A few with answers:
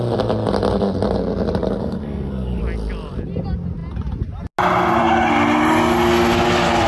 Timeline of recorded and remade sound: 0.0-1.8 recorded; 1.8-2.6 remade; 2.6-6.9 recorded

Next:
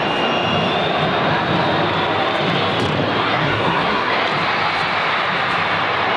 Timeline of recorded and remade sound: 0.0-3.2 recorded; 3.2-4.1 remade; 4.1-6.2 recorded

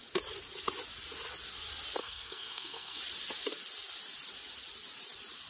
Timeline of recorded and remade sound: 0.0-2.0 recorded; 2.0-3.0 remade; 3.0-5.5 recorded

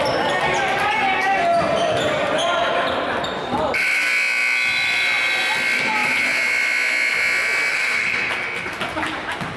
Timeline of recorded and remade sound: 0.0-7.7 recorded; 7.7-8.3 remade; 8.3-9.6 recorded